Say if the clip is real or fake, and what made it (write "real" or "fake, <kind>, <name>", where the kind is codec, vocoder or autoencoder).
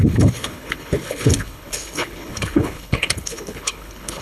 fake, codec, HILCodec